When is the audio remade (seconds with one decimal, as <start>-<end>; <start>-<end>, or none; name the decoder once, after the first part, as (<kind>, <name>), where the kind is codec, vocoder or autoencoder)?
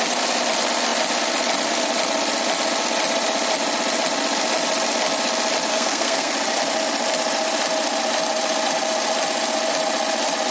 5.7-6.3 (codec, SNAC)